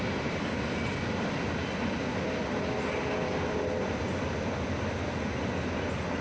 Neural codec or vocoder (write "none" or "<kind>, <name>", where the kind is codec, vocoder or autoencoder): none